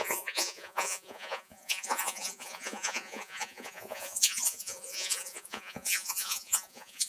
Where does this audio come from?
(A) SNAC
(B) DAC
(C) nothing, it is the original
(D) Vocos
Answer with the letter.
D